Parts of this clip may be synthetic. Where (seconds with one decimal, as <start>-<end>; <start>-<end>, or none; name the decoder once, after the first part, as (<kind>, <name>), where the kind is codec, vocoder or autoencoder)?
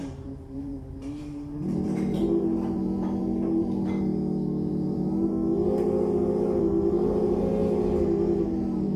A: 0.0-4.1 (vocoder, BigVGAN v2); 4.7-5.3; 6.6-7.6; 8.4-9.0